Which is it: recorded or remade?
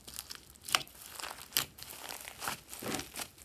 recorded